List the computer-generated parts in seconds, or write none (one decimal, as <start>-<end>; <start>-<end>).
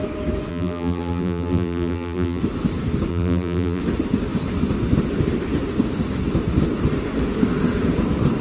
0.5-2.4; 3.1-3.8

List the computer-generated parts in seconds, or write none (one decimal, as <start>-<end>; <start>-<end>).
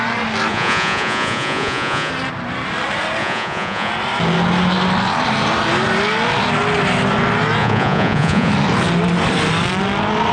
0.5-2.1; 3.2-3.9; 7.6-8.5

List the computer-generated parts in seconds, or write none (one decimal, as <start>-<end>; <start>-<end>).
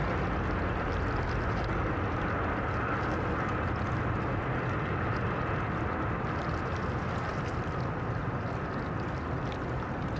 none